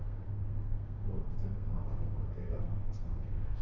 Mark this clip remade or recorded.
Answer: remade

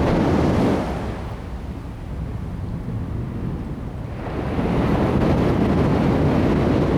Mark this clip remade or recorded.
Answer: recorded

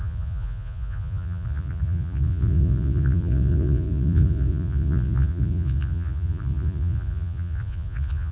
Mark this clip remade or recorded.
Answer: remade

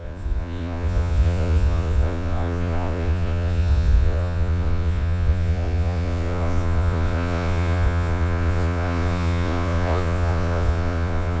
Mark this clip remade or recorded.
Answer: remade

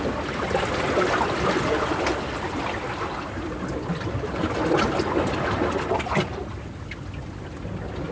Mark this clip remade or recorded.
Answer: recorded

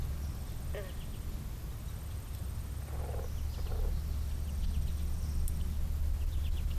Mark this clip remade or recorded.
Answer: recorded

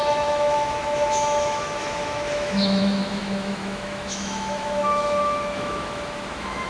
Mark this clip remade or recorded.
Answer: remade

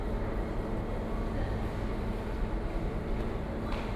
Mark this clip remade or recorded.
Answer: recorded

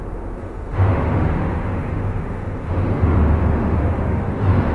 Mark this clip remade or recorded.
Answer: remade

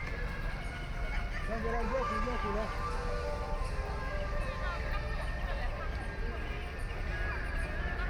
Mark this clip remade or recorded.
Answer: recorded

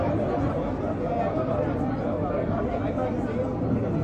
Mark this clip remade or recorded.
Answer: recorded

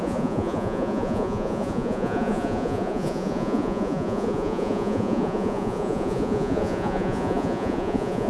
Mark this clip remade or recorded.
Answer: remade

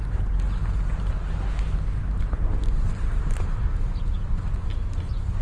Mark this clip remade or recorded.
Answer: recorded